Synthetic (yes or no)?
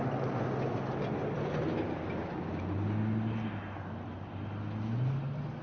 no